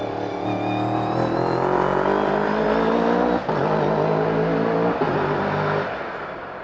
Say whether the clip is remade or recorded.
recorded